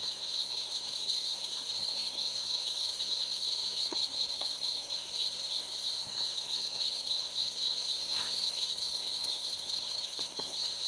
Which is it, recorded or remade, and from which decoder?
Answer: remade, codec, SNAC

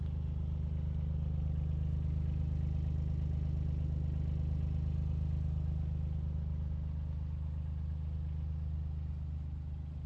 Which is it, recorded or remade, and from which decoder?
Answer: recorded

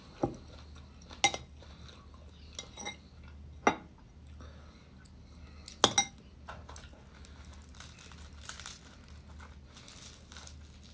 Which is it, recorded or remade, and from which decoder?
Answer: recorded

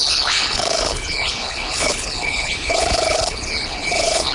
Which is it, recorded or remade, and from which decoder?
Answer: remade, codec, HILCodec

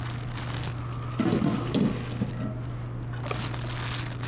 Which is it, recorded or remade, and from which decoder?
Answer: recorded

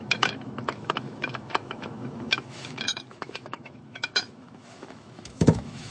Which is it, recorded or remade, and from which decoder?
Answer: remade, autoencoder, DAC-VAE